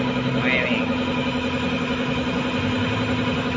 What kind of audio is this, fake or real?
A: real